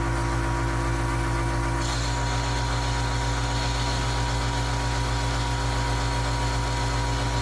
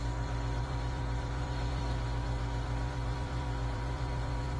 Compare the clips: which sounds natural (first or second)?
first